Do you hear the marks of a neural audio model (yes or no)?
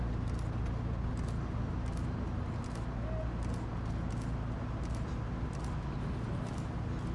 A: no